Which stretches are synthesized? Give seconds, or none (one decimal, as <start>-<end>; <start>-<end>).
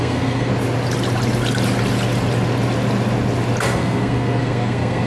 0.0-0.5; 3.6-5.1